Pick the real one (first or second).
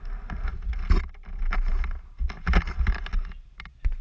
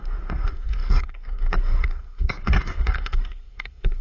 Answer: first